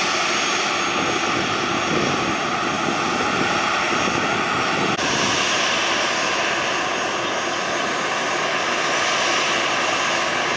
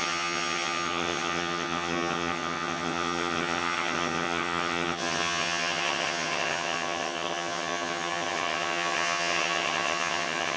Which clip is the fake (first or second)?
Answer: second